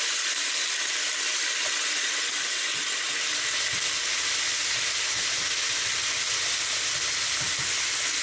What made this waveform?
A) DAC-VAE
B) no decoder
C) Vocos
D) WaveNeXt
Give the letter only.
B